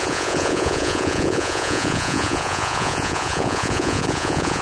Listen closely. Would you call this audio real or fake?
fake